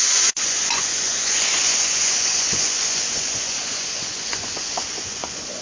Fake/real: fake